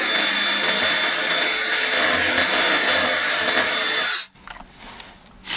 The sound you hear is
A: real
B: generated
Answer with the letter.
A